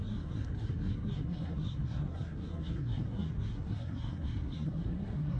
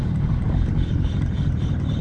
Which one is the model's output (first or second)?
first